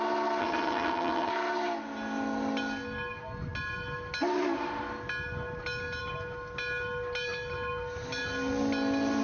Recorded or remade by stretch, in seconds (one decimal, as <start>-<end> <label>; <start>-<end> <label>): 0.0-0.4 recorded; 0.4-1.3 remade; 1.3-9.2 recorded